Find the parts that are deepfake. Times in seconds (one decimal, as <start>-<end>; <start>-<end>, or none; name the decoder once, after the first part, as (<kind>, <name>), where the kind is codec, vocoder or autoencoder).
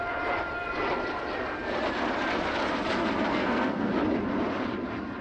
3.3-3.9 (codec, SNAC)